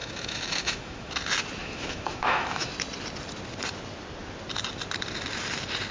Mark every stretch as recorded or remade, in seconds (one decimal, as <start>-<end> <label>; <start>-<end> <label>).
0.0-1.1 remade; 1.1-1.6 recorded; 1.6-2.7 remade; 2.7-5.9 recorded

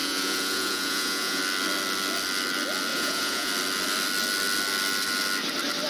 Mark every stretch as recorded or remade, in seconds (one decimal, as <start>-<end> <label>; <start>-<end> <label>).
0.0-1.4 remade; 1.4-2.9 recorded; 2.9-3.5 remade; 3.5-5.9 recorded

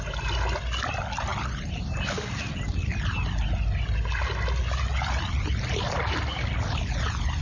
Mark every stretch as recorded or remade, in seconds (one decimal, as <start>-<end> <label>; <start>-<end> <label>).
0.0-7.4 recorded

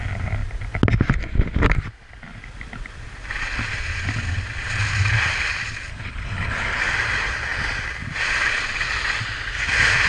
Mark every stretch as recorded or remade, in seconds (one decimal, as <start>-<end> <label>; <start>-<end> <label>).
0.0-5.9 recorded; 5.9-6.8 remade; 6.8-10.1 recorded

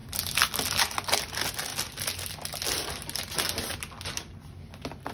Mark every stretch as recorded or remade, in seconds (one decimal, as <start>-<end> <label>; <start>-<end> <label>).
0.0-5.1 recorded

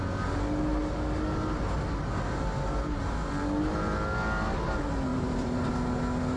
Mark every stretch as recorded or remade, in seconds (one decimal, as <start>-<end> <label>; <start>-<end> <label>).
0.0-5.1 recorded; 5.1-5.7 remade; 5.7-6.4 recorded

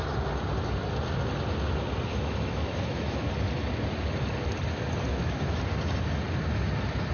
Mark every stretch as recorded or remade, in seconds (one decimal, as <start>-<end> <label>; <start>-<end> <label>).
0.0-2.1 recorded; 2.1-3.3 remade; 3.3-5.1 recorded; 5.1-5.6 remade; 5.6-7.1 recorded

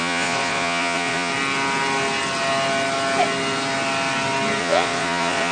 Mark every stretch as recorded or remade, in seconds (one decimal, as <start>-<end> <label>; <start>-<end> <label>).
0.0-1.3 remade; 1.3-4.6 recorded; 4.6-5.5 remade